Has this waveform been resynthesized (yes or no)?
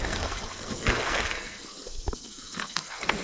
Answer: yes